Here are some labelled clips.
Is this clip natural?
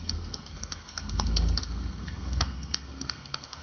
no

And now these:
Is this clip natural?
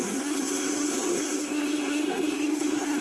no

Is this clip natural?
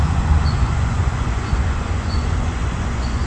no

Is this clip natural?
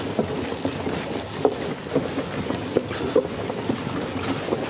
yes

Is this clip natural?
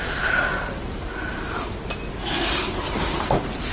yes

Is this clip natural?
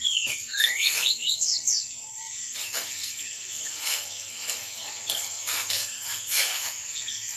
no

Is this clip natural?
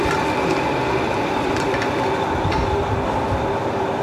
no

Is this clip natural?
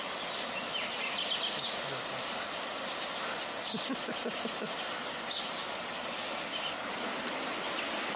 yes